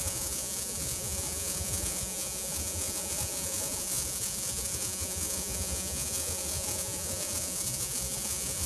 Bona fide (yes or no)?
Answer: no